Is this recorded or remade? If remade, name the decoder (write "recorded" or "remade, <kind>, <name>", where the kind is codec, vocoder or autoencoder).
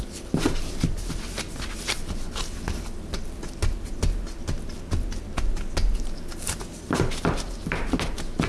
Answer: recorded